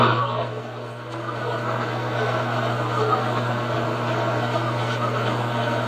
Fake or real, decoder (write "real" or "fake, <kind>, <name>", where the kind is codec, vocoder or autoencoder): fake, codec, SNAC